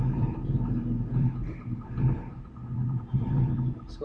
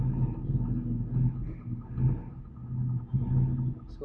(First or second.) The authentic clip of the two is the second